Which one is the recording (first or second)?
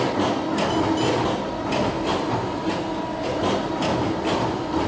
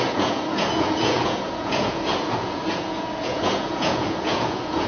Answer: first